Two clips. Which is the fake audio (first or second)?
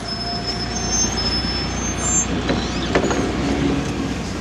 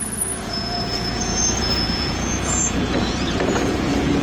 second